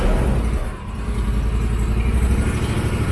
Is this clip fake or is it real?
real